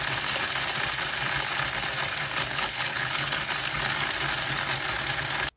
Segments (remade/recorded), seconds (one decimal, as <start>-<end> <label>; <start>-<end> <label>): 0.0-2.5 recorded; 2.5-3.4 remade; 3.4-5.6 recorded